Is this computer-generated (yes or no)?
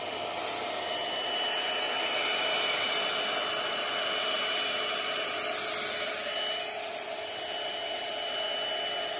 no